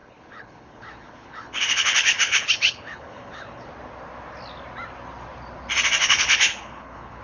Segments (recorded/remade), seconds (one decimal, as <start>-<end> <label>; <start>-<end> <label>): 0.0-3.7 remade; 3.7-6.0 recorded; 6.0-7.2 remade